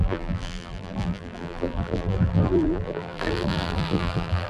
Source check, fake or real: fake